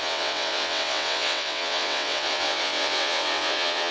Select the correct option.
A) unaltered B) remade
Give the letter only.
B